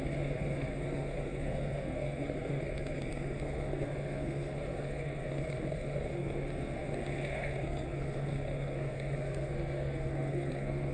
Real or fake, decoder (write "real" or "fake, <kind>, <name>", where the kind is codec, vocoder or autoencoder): fake, codec, SNAC